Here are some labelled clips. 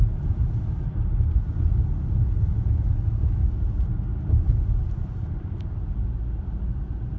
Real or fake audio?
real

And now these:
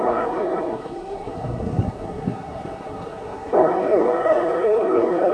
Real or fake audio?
fake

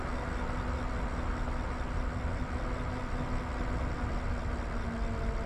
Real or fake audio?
real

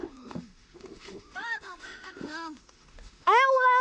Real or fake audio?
fake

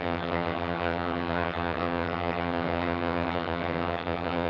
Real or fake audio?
fake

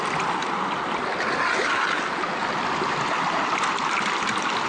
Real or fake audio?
real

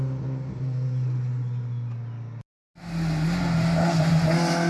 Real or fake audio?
real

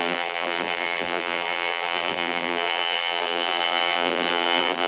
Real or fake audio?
fake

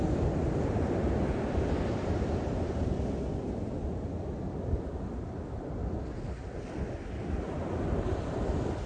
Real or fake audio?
real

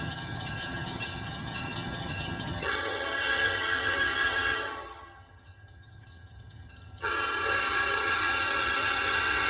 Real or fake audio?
fake